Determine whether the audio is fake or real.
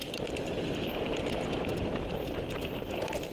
real